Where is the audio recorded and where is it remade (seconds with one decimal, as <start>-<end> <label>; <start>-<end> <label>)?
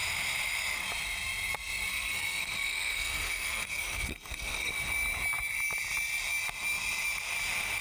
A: 0.0-1.9 recorded; 1.9-4.7 remade; 4.7-7.8 recorded